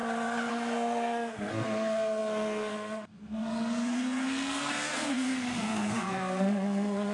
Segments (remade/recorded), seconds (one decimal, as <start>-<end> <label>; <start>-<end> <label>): 0.0-0.5 recorded; 0.5-7.1 remade